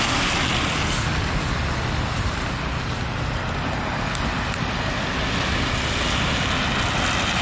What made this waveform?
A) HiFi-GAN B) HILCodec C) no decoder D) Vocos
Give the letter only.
C